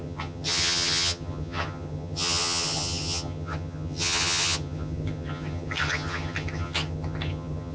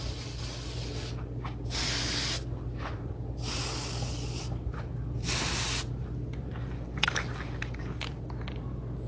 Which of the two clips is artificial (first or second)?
first